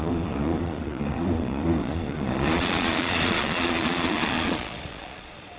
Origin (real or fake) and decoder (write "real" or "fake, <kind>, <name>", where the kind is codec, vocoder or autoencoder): fake, vocoder, Vocos